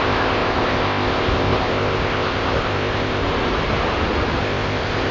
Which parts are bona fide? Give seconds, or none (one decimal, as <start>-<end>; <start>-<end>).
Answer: 3.2-4.4